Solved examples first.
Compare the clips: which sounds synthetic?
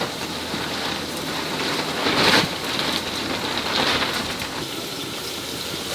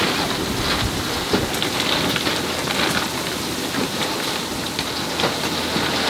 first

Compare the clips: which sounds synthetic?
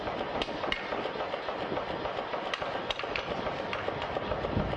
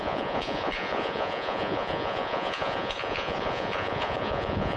second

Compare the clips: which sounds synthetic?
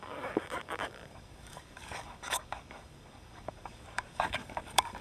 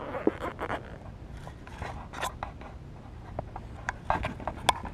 first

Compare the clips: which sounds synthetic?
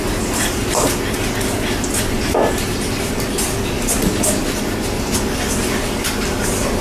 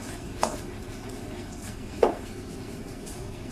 second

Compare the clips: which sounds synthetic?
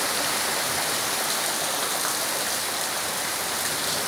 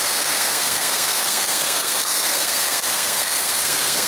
second